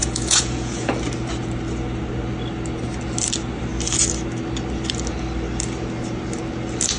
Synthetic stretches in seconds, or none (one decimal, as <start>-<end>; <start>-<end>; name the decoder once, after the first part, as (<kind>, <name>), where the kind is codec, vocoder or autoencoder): 0.0-0.9 (vocoder, Vocos)

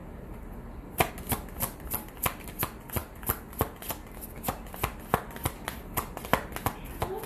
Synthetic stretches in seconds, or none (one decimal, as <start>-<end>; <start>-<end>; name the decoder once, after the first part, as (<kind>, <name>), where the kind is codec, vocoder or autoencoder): none

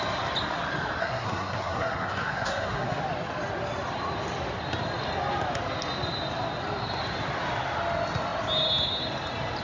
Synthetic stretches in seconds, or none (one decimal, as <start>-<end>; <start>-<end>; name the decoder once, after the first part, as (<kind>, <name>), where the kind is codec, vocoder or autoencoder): 1.0-3.0 (codec, SNAC)

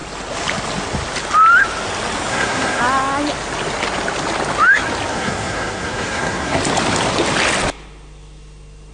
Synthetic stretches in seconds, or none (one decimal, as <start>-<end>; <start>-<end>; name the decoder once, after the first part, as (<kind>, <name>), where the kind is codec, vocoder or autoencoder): 2.3-2.8 (codec, SNAC); 5.1-6.6

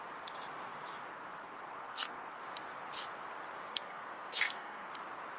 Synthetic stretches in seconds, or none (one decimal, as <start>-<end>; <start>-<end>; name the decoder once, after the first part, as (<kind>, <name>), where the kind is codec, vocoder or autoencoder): 1.8-2.3 (codec, SNAC); 3.7-4.9

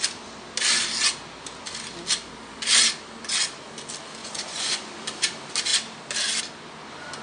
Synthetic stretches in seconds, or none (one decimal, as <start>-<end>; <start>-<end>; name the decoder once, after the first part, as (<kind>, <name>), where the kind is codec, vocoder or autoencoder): 4.2-4.9 (vocoder, Vocos)

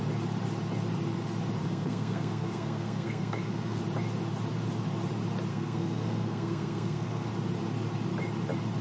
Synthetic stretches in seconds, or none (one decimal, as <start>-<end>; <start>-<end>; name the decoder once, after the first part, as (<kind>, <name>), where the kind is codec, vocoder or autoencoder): 1.6-3.8 (codec, SNAC); 5.5-7.3

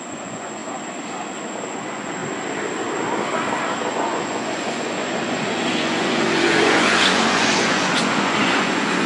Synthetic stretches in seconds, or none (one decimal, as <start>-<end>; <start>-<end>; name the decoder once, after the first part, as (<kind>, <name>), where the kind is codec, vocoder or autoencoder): 0.0-0.6 (vocoder, Vocos); 1.7-2.2; 3.9-9.1